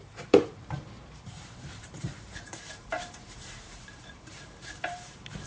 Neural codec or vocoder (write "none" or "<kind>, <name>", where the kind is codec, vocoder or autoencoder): vocoder, BigVGAN v2